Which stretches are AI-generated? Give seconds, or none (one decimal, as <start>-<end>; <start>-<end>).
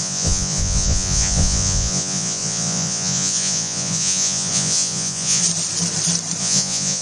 0.0-5.4; 6.4-7.0